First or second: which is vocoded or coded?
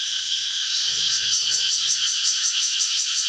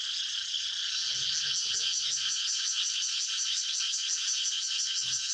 first